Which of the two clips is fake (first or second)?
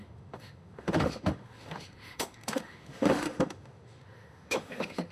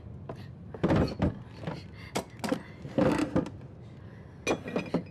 first